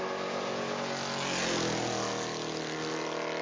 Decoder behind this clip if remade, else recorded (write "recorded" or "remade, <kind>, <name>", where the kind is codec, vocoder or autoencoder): recorded